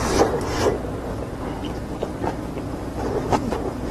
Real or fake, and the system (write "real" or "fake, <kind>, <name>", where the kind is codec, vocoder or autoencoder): real